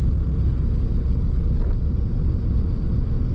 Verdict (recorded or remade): recorded